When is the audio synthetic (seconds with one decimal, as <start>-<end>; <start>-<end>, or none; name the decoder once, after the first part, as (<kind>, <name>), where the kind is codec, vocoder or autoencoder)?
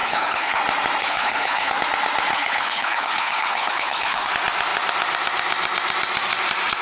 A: 0.0-0.6 (codec, HILCodec); 1.0-1.7; 2.3-4.3